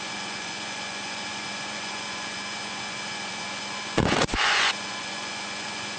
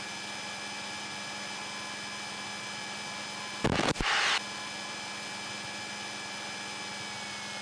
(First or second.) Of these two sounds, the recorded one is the second